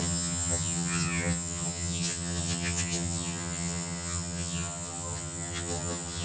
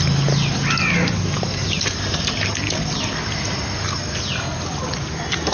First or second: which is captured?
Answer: second